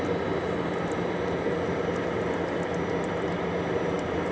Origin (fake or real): real